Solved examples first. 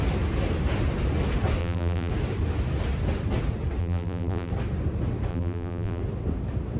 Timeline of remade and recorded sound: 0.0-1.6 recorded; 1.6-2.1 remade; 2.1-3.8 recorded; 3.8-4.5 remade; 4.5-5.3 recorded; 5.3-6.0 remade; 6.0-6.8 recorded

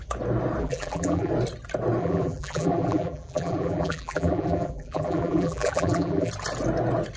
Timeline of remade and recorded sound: 0.0-0.6 recorded; 0.6-1.3 remade; 1.3-2.0 recorded; 2.0-6.3 remade; 6.3-7.2 recorded

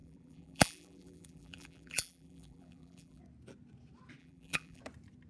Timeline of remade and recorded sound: 0.0-3.2 remade; 3.2-4.2 recorded; 4.2-4.8 remade; 4.8-5.3 recorded

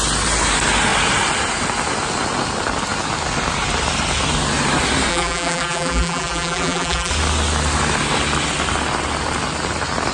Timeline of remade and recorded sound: 0.0-5.1 recorded; 5.1-7.1 remade; 7.1-10.1 recorded